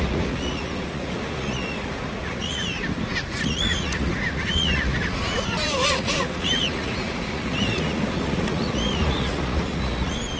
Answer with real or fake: fake